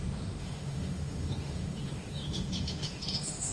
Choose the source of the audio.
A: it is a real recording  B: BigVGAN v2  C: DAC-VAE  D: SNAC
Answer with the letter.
C